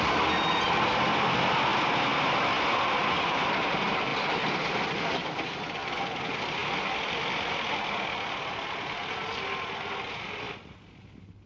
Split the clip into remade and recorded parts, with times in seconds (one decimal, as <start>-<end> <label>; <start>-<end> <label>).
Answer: 0.0-4.1 recorded; 4.1-5.6 remade; 5.6-6.6 recorded; 6.6-7.2 remade; 7.2-11.5 recorded